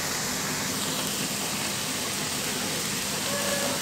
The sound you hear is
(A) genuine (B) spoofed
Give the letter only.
A